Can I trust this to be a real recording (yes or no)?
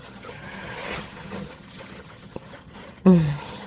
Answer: no